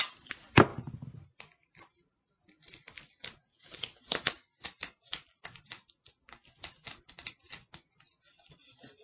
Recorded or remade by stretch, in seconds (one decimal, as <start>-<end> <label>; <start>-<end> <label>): 0.0-0.7 recorded; 0.7-3.0 remade; 3.0-3.5 recorded; 3.5-7.3 remade; 7.3-9.0 recorded